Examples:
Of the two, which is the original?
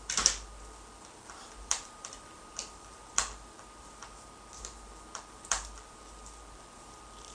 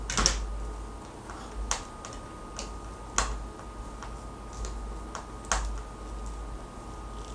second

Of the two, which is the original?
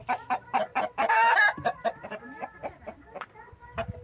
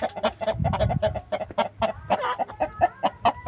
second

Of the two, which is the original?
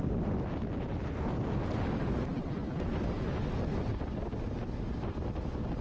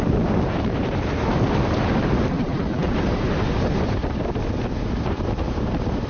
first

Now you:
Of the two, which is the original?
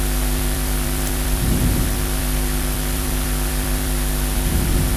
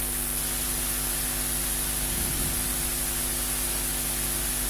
second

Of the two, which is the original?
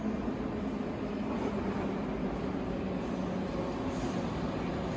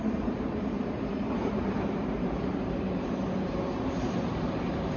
first